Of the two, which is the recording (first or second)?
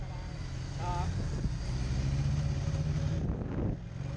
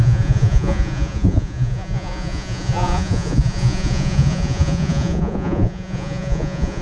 first